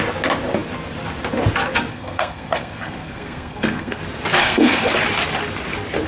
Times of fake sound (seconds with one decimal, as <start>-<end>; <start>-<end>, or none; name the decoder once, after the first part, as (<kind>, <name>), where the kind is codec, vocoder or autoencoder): 1.9-4.0 (codec, SNAC); 4.4-4.9